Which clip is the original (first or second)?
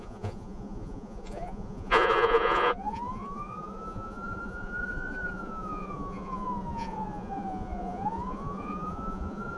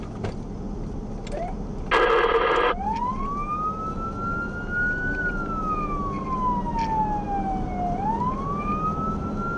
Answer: second